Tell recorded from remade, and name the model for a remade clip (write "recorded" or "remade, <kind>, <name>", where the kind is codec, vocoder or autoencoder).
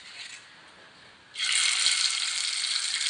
recorded